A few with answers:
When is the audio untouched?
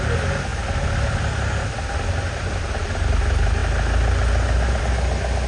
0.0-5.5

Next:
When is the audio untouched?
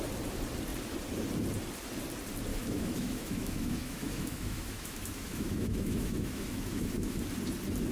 0.0-2.5; 7.2-7.9